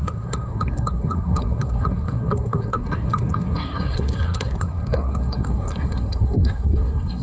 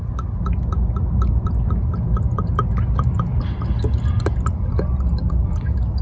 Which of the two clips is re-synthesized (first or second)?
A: first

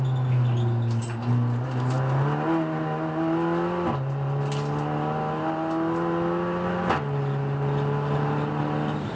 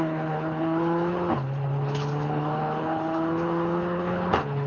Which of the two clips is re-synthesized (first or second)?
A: second